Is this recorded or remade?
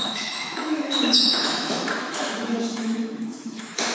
remade